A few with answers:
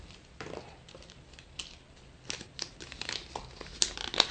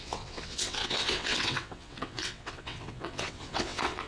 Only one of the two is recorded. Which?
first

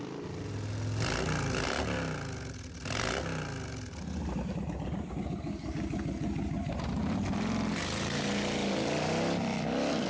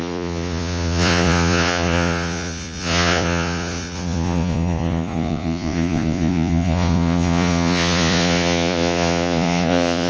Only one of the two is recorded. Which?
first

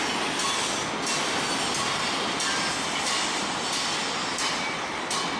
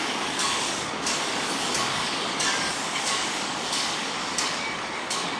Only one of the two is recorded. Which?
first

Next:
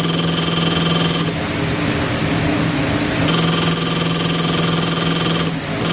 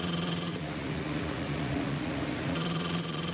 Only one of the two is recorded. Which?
first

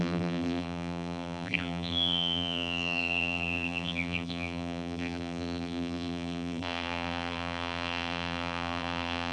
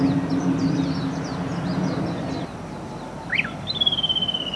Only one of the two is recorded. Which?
second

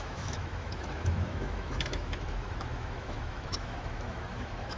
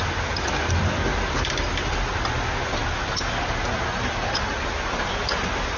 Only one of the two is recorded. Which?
second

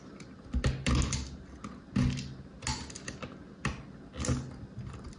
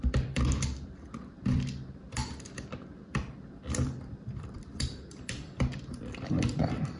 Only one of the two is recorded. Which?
first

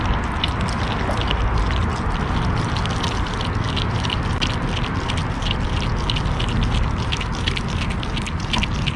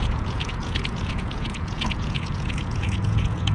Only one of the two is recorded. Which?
first